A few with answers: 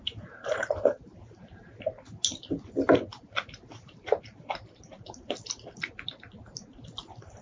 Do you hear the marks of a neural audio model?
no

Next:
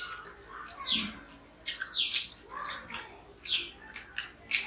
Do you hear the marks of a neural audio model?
no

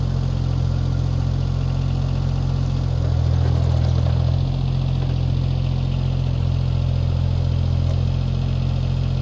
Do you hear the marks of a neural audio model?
no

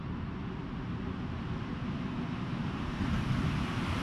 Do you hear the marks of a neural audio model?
no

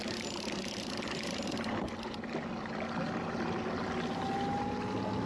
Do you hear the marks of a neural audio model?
no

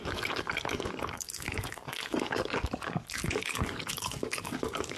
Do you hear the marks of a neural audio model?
yes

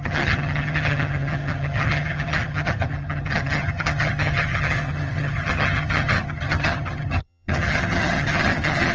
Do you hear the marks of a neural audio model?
yes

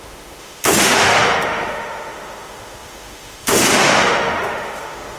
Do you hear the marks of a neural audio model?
yes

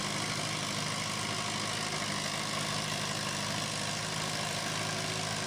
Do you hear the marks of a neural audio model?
no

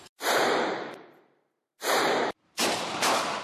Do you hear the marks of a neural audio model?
yes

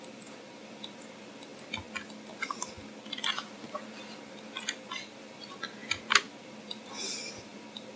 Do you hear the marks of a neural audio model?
no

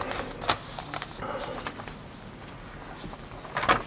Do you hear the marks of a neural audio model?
no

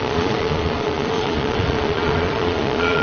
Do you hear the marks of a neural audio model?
yes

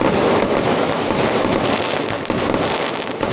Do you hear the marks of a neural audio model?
no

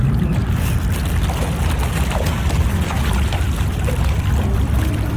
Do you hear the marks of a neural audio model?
no